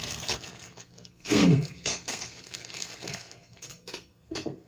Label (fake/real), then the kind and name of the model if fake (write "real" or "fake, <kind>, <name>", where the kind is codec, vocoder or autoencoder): fake, codec, SNAC